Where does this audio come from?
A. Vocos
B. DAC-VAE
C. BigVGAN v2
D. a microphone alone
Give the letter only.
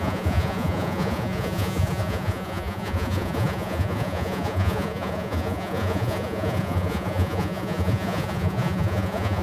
A